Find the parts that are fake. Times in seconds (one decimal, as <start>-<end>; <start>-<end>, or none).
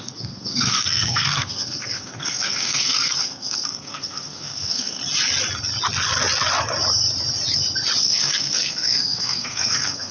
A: 0.0-5.0; 8.0-10.1